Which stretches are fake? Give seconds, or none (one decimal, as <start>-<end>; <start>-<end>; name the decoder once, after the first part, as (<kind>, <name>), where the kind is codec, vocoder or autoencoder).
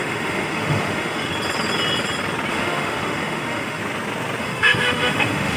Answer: 0.0-1.3 (autoencoder, DAC-VAE); 2.5-3.8; 4.4-5.6